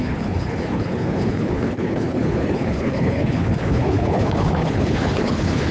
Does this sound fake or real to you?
fake